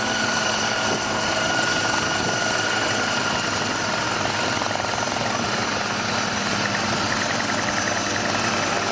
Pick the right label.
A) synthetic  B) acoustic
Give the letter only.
B